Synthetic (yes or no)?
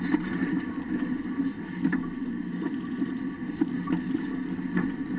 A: no